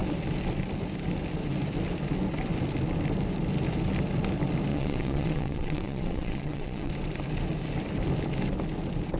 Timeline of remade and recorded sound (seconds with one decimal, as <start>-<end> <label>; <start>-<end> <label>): 0.0-4.7 recorded; 4.7-6.9 remade; 6.9-9.2 recorded